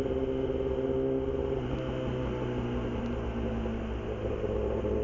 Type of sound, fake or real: real